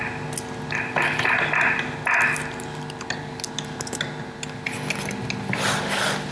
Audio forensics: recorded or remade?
recorded